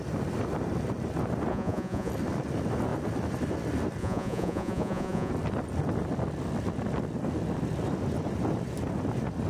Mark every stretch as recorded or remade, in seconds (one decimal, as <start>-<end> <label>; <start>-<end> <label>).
0.0-1.5 recorded; 1.5-2.1 remade; 2.1-4.0 recorded; 4.0-5.3 remade; 5.3-9.5 recorded